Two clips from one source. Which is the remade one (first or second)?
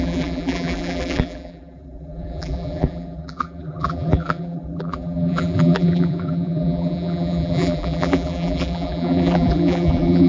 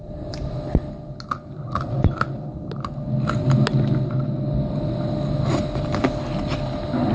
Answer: first